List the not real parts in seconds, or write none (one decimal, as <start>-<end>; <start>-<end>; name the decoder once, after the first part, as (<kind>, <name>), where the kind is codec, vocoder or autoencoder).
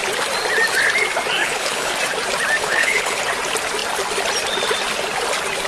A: 1.4-1.9 (codec, HILCodec); 2.6-3.2